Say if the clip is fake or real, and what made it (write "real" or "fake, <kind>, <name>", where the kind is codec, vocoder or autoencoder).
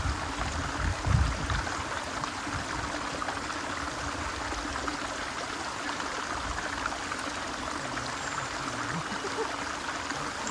real